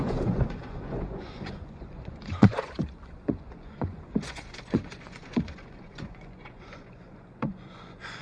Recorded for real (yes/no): no